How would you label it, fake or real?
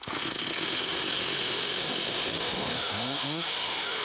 fake